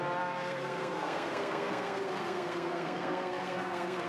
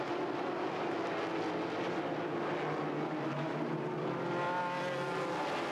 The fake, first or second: first